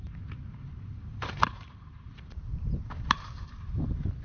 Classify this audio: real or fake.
fake